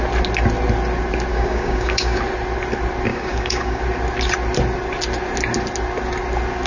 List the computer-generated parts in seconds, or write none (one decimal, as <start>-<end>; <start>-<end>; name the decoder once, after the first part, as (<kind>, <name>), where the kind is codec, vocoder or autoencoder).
1.3-2.2 (codec, DAC); 3.1-3.8

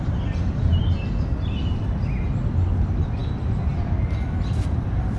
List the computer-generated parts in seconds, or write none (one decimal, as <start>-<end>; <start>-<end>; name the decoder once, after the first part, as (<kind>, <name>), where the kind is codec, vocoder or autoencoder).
none

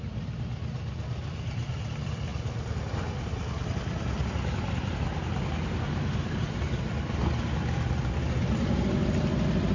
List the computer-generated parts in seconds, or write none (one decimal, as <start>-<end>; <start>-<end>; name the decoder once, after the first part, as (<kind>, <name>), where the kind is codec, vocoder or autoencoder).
none

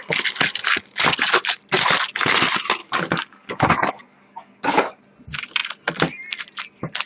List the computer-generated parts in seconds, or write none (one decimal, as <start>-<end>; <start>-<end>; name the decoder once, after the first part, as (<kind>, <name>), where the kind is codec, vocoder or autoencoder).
2.8-5.0 (codec, DAC)

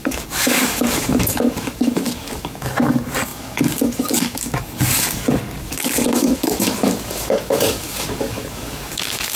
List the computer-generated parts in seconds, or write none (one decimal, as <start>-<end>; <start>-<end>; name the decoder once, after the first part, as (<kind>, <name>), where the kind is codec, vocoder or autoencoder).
0.0-9.4 (codec, DAC)

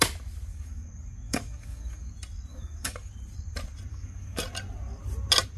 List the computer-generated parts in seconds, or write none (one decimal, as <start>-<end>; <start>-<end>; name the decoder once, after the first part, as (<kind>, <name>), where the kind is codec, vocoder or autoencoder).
0.5-2.1 (codec, DAC); 2.5-3.1; 3.9-4.4

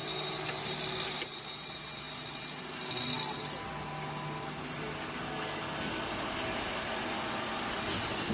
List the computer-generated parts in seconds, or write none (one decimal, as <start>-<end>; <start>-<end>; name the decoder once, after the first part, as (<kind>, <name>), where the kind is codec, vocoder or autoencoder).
none